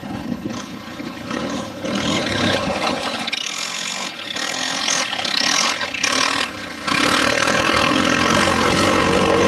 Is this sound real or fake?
fake